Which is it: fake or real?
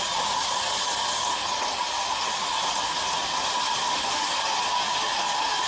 real